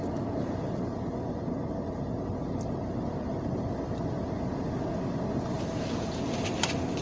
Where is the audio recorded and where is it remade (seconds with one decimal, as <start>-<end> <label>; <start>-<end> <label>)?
0.0-7.0 recorded